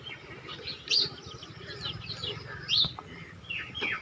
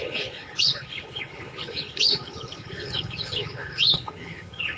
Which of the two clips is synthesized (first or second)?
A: second